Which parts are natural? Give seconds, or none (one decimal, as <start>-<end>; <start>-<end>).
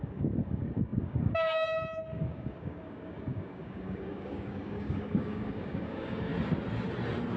6.3-7.4